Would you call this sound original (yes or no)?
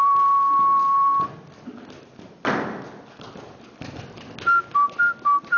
yes